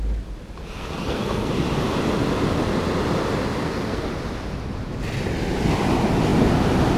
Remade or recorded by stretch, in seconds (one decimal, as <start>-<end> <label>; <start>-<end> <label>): 0.0-0.6 recorded; 0.6-1.5 remade; 1.5-3.6 recorded; 3.6-4.1 remade; 4.1-7.0 recorded